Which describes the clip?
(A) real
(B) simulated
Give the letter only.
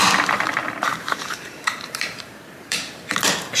B